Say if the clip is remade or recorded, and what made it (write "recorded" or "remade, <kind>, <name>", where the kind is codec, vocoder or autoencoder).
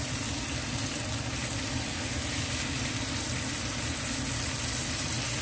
recorded